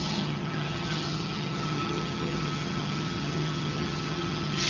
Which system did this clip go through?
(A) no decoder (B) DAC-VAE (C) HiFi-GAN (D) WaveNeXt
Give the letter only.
C